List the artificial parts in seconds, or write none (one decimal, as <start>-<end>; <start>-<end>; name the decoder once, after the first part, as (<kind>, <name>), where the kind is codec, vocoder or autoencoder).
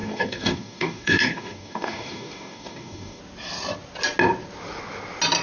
0.0-3.2 (codec, DAC)